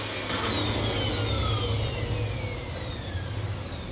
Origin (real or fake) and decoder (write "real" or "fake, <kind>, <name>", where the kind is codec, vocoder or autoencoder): real